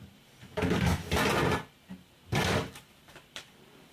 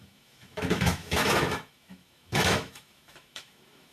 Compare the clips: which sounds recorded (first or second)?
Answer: first